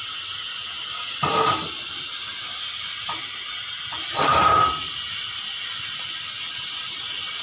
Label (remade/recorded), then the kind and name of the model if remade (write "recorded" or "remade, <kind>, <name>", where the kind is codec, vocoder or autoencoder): recorded